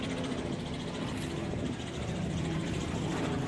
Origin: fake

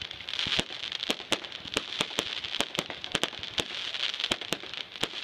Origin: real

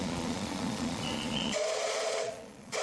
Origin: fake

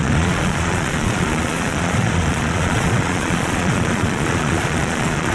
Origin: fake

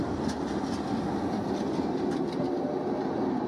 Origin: real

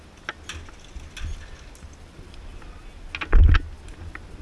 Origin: real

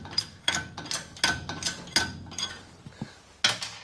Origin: real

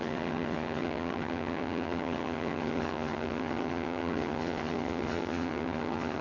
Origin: fake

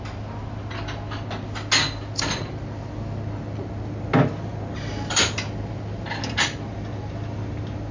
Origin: real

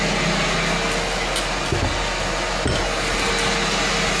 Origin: real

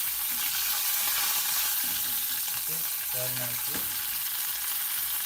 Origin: real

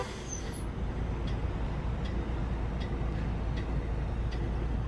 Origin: real